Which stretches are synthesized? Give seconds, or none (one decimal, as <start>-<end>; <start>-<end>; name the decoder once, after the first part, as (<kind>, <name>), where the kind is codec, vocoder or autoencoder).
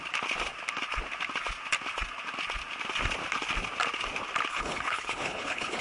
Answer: 4.5-5.8 (codec, HILCodec)